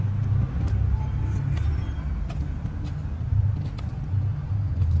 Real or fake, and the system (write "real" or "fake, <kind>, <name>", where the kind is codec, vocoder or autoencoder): real